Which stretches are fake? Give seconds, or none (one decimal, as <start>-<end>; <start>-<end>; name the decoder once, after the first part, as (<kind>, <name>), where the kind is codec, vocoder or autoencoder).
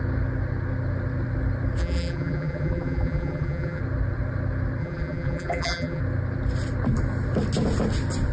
1.8-3.8 (vocoder, BigVGAN v2); 4.8-6.0